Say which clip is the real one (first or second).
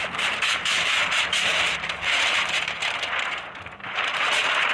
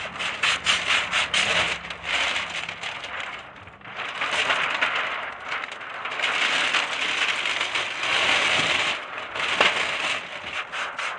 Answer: second